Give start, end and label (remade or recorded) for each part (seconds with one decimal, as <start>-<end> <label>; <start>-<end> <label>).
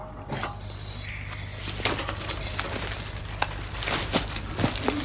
0.0-5.0 recorded